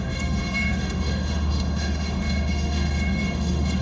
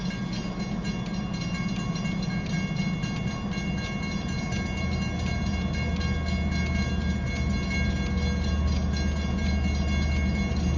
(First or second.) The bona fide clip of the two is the second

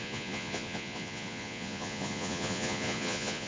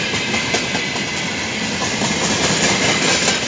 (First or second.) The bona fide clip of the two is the second